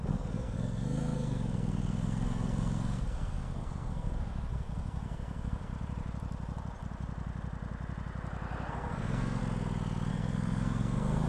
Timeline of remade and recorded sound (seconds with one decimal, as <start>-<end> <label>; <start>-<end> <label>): 0.0-5.7 remade; 5.7-8.7 recorded; 8.7-9.4 remade; 9.4-10.1 recorded; 10.1-11.3 remade

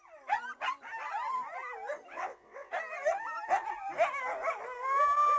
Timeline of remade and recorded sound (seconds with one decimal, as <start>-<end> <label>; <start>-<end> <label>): 0.0-2.1 recorded; 2.1-2.7 remade; 2.7-5.4 recorded

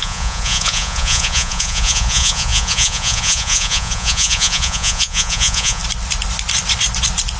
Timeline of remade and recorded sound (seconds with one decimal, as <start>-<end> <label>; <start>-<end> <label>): 0.0-5.8 remade; 5.8-7.4 recorded

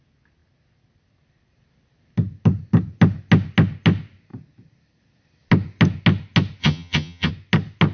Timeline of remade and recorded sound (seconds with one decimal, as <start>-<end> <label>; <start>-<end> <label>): 0.0-6.6 recorded; 6.6-7.3 remade; 7.3-7.9 recorded